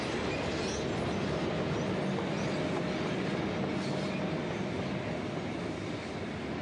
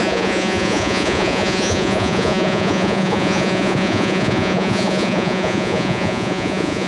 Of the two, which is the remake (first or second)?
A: second